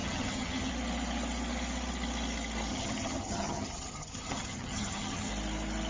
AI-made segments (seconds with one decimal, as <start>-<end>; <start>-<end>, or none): 0.0-0.7; 2.7-5.3